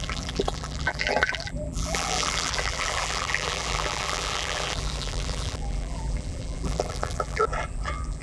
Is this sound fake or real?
fake